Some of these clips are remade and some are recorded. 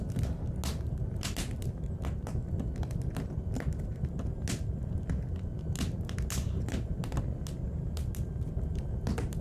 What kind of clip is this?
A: recorded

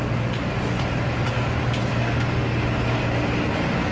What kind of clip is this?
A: recorded